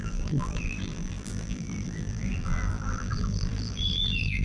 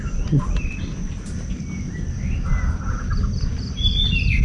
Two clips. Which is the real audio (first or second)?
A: second